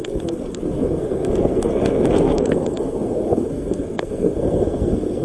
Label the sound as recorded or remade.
remade